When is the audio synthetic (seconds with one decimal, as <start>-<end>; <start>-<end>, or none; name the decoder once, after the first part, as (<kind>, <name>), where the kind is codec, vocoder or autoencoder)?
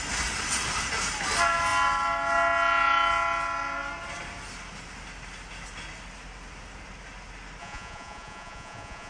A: 7.6-9.1 (vocoder, Vocos)